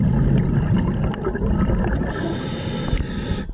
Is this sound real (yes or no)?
yes